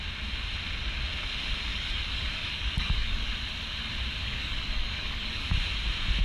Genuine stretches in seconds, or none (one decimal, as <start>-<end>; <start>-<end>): 0.0-1.7; 3.3-4.2; 5.5-6.2